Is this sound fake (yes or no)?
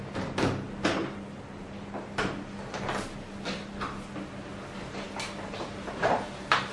no